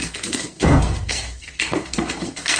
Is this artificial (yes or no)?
yes